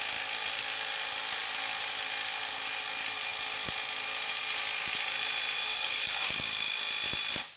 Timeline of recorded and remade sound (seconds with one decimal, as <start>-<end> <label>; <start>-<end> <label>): 0.0-5.7 recorded; 5.7-6.8 remade; 6.8-7.6 recorded